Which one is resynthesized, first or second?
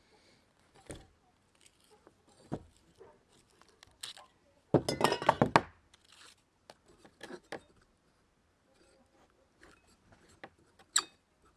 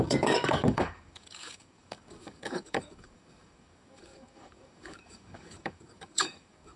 second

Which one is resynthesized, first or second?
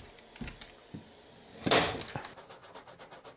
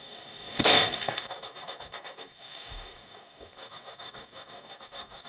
second